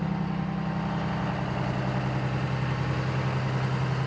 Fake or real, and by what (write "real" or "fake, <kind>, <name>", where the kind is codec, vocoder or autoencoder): real